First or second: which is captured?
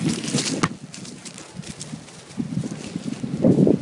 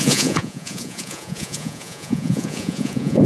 first